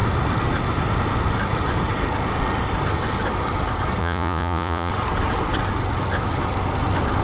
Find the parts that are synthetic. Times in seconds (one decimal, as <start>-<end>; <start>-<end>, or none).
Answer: 4.0-4.9